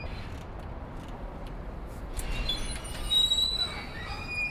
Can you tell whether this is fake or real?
fake